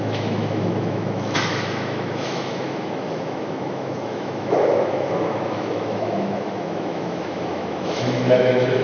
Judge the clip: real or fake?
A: fake